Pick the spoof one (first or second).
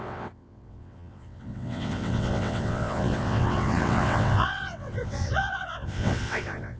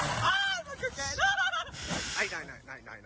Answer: first